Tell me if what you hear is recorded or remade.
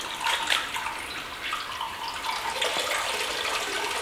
recorded